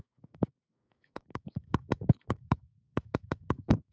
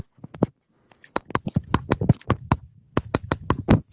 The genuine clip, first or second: second